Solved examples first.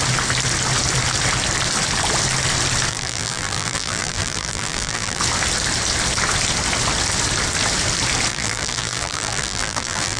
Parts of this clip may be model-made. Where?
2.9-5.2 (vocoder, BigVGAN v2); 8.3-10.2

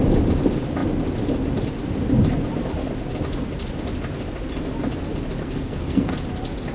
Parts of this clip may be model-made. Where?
5.4-6.1 (codec, SNAC)

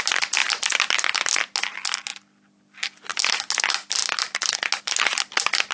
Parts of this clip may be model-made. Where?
none

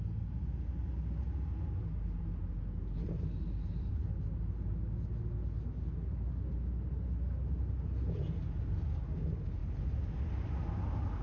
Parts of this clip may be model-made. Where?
none

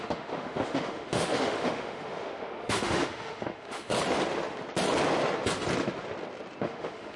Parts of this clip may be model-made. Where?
0.0-3.9 (autoencoder, DAC-VAE); 6.6-7.2

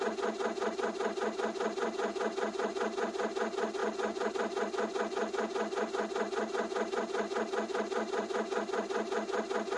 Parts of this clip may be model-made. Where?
3.8-4.3 (vocoder, BigVGAN v2)

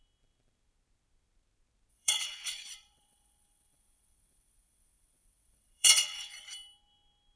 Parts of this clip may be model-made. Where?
1.9-6.3 (vocoder, WaveNeXt)

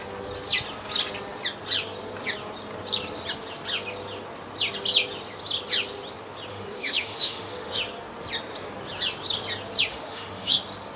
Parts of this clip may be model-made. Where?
6.5-7.8 (autoencoder, DAC-VAE); 9.9-10.6